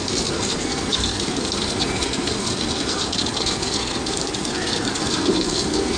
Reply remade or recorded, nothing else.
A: remade